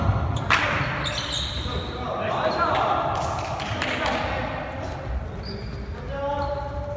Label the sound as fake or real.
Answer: real